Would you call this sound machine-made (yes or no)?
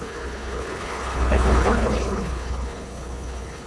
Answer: yes